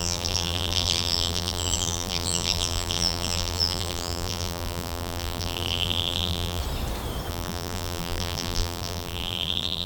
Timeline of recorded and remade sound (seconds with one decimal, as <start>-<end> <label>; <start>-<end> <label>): 0.0-6.6 remade; 6.6-7.3 recorded; 7.3-9.9 remade